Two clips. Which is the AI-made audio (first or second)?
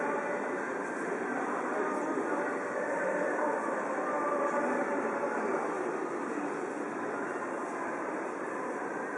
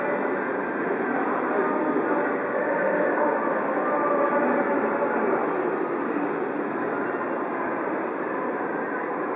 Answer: first